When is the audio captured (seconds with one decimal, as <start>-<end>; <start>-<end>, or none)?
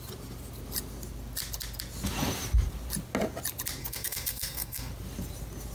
0.0-3.8; 4.9-5.7